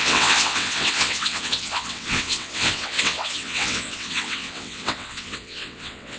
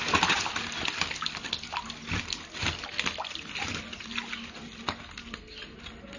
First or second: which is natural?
second